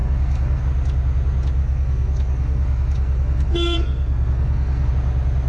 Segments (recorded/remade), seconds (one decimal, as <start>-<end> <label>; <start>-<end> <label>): 0.0-0.6 remade; 0.6-1.6 recorded; 1.6-4.9 remade; 4.9-5.5 recorded